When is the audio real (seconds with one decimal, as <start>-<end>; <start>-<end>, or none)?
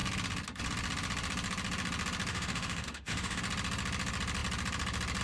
0.0-2.3; 3.4-5.2